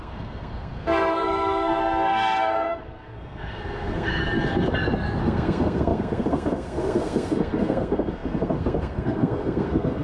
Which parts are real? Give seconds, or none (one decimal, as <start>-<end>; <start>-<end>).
4.2-5.2

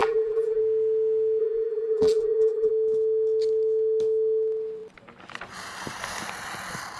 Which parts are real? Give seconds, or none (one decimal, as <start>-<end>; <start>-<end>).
0.6-1.4; 2.7-7.0